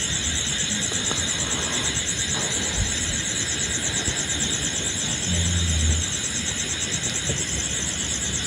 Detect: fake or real real